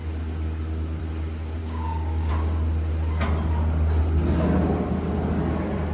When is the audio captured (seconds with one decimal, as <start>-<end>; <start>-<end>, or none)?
0.0-1.6; 2.3-5.9